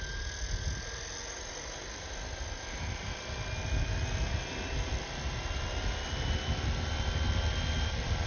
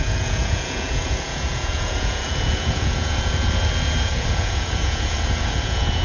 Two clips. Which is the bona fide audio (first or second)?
first